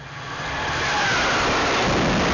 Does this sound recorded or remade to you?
recorded